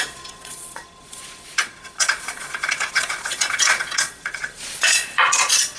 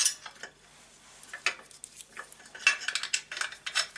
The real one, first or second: second